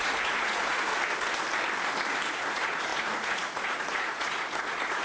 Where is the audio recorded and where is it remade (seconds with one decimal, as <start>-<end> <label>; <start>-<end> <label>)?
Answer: 0.0-0.9 remade; 0.9-2.3 recorded; 2.3-5.0 remade